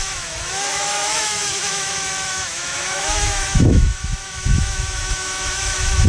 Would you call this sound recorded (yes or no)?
no